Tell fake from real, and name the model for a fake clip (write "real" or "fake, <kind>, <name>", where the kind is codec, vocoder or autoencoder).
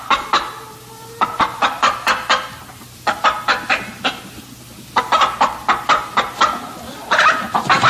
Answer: real